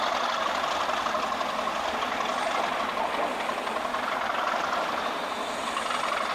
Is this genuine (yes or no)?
yes